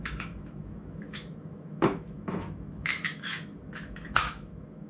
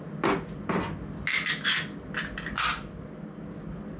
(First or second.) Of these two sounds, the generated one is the first